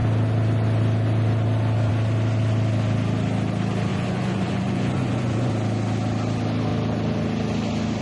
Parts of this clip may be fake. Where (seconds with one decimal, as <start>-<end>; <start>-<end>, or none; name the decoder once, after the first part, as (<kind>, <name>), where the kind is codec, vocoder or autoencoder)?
3.9-5.5 (vocoder, Vocos)